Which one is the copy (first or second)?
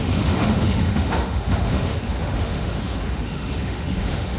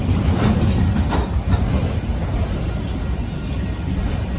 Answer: first